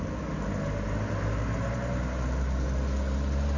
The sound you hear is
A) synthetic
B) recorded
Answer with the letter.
B